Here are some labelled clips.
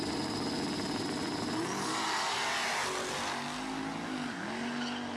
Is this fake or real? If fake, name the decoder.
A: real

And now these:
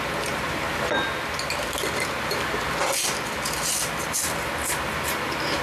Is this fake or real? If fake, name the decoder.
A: real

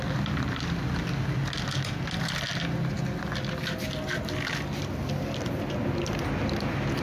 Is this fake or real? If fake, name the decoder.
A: real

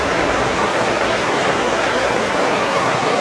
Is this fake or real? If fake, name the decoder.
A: fake, codec, SNAC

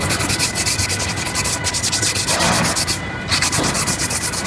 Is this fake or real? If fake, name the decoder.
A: real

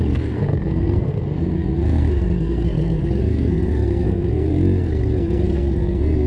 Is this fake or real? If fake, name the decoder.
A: fake, codec, SNAC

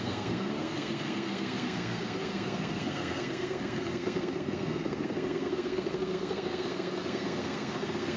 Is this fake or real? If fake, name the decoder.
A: fake, codec, SNAC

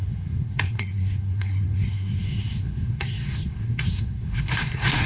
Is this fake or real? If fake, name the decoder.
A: fake, codec, SNAC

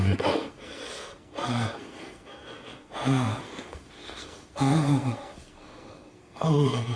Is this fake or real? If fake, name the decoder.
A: fake, codec, SNAC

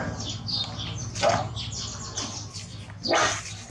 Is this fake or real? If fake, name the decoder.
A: real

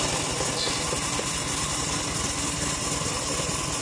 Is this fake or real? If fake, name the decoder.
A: real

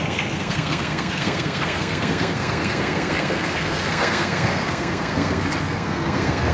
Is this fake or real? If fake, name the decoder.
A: fake, codec, SNAC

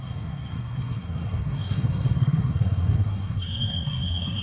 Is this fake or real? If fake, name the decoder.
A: fake, codec, SNAC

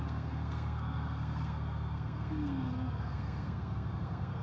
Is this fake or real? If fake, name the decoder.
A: fake, codec, SNAC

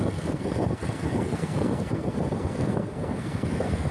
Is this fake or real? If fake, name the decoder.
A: fake, codec, SNAC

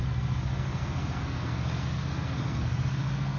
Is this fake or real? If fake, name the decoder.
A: fake, codec, SNAC